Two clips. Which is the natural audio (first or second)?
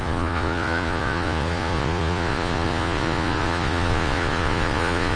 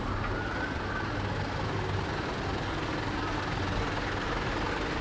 second